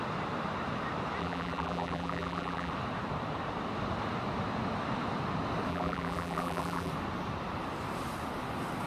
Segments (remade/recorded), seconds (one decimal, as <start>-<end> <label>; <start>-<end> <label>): 0.0-1.2 recorded; 1.2-2.7 remade; 2.7-5.7 recorded; 5.7-6.9 remade; 6.9-8.9 recorded